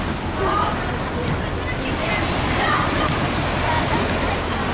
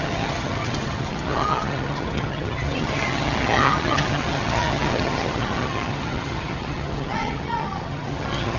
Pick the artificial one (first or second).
second